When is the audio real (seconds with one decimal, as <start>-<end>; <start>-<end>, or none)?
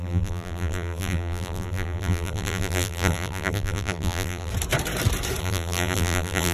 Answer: 4.5-5.4